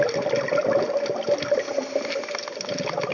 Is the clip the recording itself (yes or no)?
yes